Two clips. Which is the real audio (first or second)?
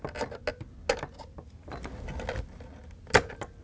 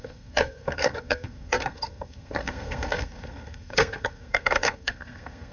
first